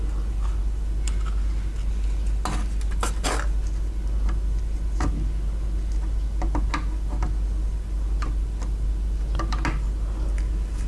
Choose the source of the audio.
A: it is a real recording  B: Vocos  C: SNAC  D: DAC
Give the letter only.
A